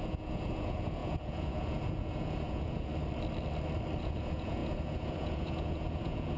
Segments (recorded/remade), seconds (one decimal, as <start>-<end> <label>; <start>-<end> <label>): 0.0-2.9 remade; 2.9-4.0 recorded; 4.0-6.4 remade